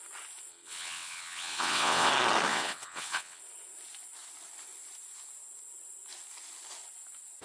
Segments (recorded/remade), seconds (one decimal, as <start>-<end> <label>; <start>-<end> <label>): 0.0-0.5 recorded; 0.5-2.1 remade; 2.1-2.5 recorded; 2.5-3.4 remade; 3.4-7.4 recorded